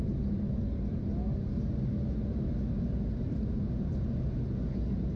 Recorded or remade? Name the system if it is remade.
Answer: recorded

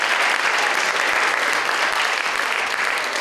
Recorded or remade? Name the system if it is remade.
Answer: recorded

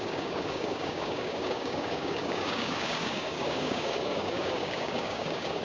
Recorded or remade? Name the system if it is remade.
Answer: remade, codec, DAC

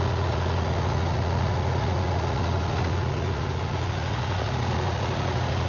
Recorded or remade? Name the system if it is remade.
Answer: remade, vocoder, Vocos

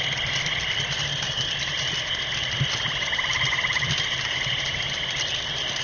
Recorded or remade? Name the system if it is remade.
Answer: recorded